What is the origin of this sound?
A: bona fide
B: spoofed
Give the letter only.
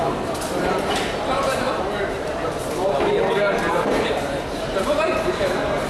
B